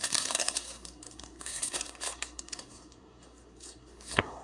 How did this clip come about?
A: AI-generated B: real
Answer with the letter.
A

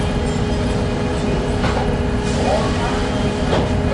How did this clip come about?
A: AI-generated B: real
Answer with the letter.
B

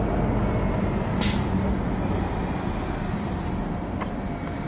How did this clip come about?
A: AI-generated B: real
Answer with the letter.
B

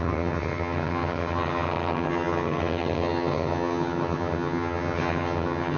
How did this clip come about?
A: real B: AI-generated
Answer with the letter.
B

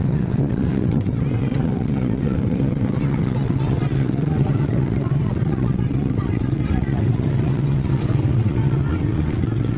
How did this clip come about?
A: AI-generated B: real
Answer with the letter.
A